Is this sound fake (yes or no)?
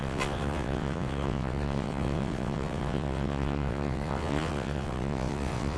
yes